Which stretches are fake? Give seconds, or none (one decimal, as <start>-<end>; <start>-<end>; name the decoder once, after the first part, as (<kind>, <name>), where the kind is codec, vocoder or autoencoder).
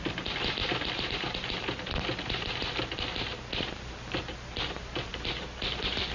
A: none